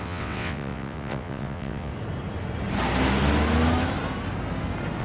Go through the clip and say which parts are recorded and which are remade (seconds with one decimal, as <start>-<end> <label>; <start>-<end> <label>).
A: 0.0-1.9 remade; 1.9-5.0 recorded